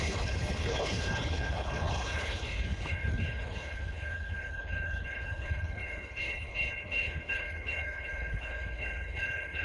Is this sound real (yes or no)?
no